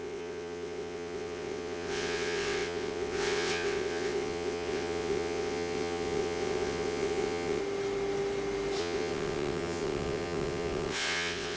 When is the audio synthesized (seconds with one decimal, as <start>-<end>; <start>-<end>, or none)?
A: 0.0-7.6; 8.8-11.6